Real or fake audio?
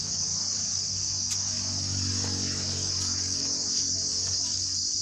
fake